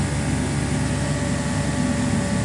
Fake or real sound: real